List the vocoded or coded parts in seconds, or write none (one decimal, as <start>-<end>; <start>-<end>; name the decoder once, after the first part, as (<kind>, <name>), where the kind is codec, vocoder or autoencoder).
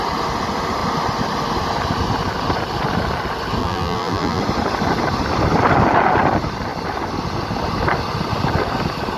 3.6-4.4 (vocoder, BigVGAN v2)